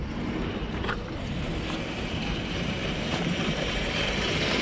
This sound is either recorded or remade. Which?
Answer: remade